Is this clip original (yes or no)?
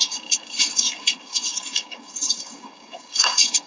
no